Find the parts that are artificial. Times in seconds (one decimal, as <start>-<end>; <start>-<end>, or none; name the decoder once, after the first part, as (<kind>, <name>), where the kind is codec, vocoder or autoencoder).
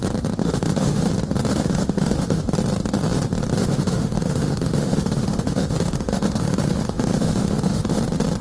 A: 0.4-1.1 (autoencoder, DAC-VAE); 1.5-2.4; 3.6-8.0